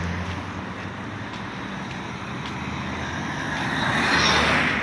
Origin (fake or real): real